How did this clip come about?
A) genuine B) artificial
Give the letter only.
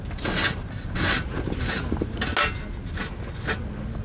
A